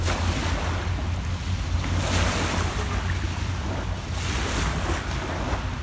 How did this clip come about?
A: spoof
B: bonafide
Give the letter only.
B